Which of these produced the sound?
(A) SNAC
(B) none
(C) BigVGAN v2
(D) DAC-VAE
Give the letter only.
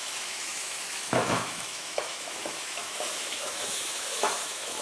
D